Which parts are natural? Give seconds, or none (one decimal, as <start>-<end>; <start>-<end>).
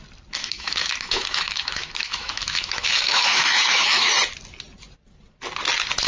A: 0.0-0.4; 4.1-6.1